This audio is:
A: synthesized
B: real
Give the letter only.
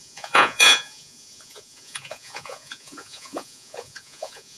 A